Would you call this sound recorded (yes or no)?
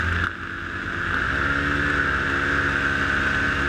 yes